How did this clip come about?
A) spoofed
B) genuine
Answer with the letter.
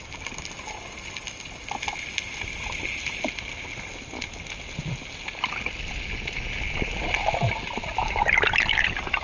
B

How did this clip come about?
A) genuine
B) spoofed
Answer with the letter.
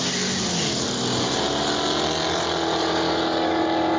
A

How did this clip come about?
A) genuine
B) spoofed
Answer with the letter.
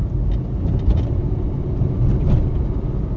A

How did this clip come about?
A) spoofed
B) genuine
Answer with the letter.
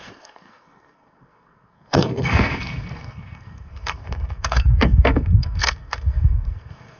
A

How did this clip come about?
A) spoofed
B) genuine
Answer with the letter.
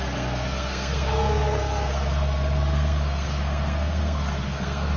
A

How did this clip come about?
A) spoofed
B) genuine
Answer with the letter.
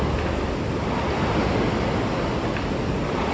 B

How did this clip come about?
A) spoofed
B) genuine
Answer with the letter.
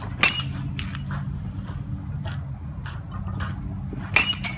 B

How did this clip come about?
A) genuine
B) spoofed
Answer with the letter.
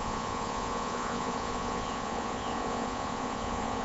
B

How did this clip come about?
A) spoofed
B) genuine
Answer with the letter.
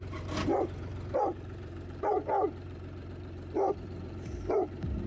A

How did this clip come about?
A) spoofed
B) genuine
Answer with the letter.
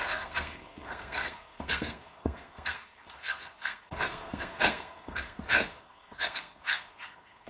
A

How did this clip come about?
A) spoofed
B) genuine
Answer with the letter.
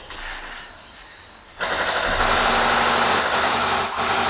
B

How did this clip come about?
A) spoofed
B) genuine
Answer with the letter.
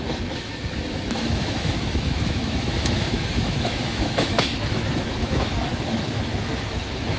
A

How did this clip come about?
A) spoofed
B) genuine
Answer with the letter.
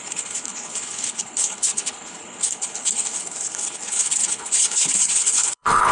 A